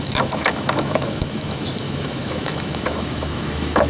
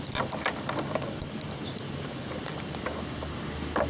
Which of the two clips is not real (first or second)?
first